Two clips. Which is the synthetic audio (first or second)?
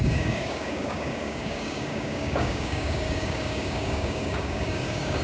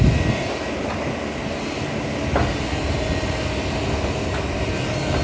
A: first